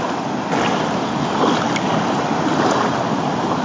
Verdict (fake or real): real